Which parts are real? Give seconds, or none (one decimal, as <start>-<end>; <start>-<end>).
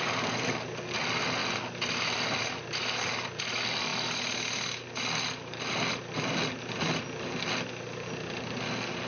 0.0-9.1